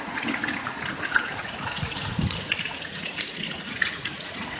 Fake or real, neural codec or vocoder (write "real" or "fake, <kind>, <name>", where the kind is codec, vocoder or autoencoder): fake, vocoder, Vocos